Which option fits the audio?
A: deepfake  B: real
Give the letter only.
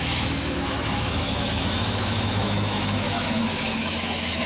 A